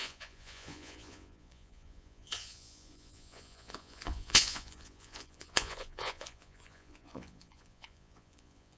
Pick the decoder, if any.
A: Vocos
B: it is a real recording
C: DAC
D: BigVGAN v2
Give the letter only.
A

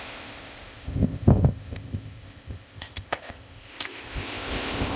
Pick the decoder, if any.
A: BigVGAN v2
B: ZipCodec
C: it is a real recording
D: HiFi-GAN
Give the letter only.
B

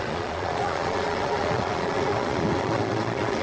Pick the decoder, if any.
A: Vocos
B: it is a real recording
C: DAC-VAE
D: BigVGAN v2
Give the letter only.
A